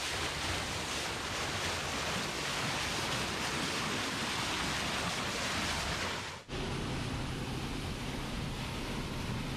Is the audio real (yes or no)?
yes